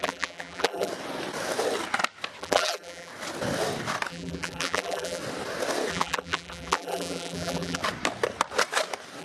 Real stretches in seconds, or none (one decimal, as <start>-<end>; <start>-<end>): 0.9-2.4; 3.1-4.1; 5.2-5.9; 7.8-9.2